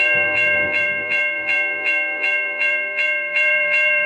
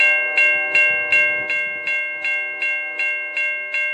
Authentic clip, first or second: second